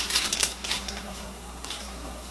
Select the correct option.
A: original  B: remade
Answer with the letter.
B